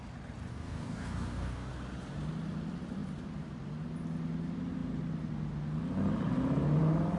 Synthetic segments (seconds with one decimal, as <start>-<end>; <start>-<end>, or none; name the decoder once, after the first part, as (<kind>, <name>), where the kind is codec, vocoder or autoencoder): 0.5-1.7 (codec, DAC)